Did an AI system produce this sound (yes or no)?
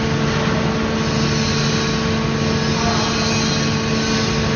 no